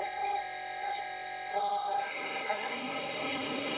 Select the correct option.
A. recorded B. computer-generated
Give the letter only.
B